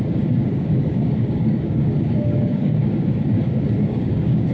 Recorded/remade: remade